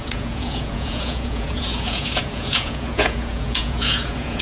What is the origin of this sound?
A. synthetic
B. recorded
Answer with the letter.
A